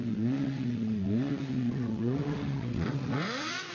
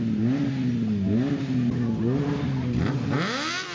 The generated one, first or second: first